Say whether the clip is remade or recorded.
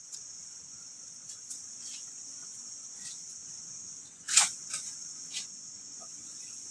remade